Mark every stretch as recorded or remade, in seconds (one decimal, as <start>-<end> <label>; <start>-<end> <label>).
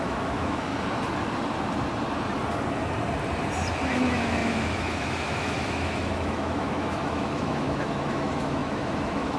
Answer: 0.0-0.7 remade; 0.7-3.9 recorded; 3.9-9.4 remade